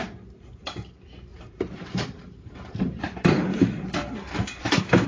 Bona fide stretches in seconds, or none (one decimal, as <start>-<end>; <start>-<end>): 0.0-1.3; 3.6-5.1